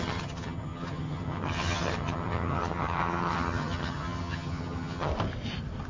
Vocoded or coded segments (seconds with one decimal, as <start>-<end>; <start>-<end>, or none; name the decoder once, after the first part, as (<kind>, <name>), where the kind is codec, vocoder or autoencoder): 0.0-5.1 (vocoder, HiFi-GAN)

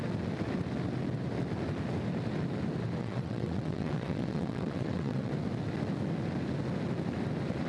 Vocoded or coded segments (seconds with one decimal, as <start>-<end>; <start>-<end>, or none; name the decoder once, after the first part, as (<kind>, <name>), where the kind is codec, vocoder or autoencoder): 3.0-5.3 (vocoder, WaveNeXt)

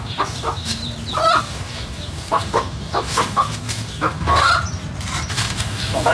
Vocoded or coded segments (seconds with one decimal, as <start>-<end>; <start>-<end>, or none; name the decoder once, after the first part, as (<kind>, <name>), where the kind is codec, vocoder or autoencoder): 0.0-0.8 (codec, DAC); 1.4-4.5; 5.3-6.1

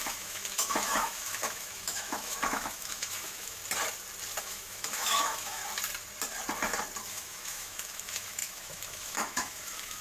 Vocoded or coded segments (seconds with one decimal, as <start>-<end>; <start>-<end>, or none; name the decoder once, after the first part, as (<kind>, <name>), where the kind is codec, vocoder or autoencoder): 0.0-3.6 (autoencoder, DAC-VAE); 4.4-5.6; 7.1-10.0

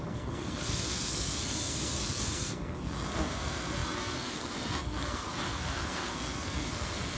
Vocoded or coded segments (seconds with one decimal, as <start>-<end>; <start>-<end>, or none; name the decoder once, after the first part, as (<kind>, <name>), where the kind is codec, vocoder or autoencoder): 0.0-7.2 (codec, SNAC)

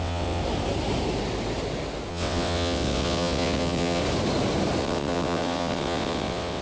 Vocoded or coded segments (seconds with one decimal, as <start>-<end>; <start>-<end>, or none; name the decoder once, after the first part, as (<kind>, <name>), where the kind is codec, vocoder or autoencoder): 0.0-0.4 (vocoder, WaveNeXt); 2.1-4.0; 4.8-6.6